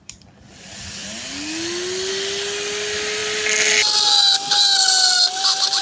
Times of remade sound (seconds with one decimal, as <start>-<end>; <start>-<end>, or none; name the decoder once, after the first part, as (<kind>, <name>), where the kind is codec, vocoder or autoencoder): none